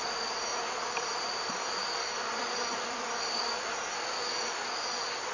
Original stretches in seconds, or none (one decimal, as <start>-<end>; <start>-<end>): 0.0-0.5; 3.7-5.3